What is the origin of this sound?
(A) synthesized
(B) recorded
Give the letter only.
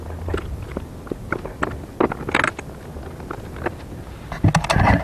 B